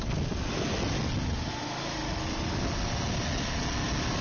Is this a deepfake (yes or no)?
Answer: no